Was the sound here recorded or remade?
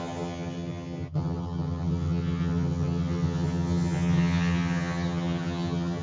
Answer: remade